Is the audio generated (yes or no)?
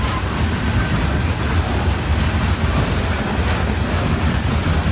no